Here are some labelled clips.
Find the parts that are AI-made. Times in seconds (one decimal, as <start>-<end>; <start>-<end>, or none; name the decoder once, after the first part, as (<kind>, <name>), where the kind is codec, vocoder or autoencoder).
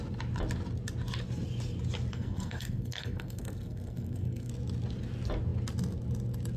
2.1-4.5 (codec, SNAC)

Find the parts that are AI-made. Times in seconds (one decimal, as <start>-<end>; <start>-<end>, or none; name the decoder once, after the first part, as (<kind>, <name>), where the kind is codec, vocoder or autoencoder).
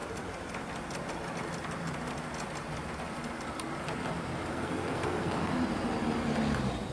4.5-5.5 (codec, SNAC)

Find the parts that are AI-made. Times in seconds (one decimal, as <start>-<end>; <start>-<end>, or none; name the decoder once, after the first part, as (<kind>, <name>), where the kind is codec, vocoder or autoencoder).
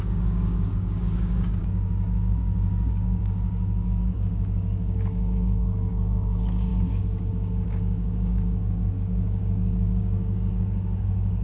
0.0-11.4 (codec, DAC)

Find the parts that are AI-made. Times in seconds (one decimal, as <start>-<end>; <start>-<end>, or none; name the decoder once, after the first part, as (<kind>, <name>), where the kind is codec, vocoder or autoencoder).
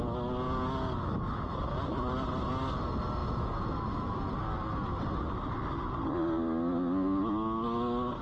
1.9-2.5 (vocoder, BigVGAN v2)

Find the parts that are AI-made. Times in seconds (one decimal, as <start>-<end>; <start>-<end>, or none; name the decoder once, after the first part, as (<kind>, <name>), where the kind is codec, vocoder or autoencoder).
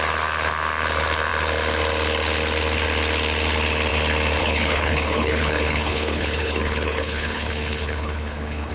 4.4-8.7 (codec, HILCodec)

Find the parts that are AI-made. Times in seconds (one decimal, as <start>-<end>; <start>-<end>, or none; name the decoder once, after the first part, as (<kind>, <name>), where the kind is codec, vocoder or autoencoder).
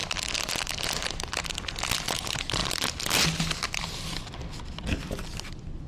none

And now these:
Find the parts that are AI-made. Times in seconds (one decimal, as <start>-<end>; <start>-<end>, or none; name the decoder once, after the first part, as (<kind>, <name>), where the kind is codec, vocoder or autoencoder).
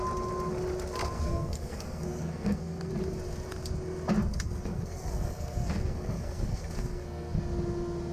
1.0-2.9 (codec, SNAC); 4.3-7.4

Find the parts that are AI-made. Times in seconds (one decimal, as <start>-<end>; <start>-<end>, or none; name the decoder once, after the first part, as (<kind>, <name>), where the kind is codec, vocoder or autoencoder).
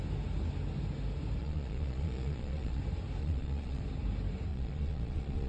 1.4-2.8 (vocoder, Vocos); 3.2-3.8; 4.5-5.5